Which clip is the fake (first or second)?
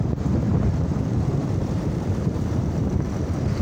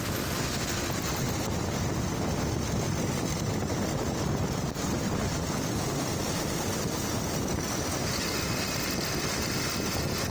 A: first